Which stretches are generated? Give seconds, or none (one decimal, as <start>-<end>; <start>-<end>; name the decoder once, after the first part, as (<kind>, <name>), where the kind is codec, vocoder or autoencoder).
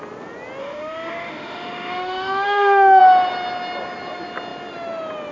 0.6-3.0 (autoencoder, DAC-VAE)